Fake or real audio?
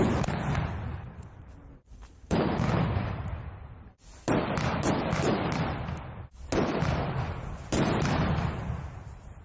fake